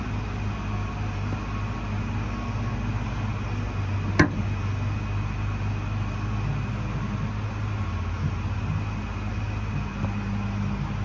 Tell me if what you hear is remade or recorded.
recorded